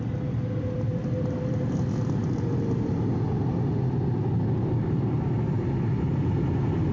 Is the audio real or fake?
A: real